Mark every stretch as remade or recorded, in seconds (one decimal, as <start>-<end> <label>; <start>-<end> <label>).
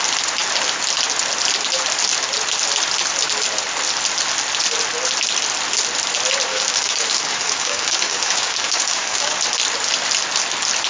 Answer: 0.0-6.5 recorded; 6.5-9.4 remade; 9.4-10.9 recorded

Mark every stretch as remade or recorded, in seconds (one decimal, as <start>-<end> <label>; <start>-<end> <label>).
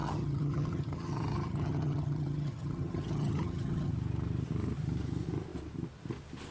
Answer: 0.0-3.9 remade; 3.9-6.5 recorded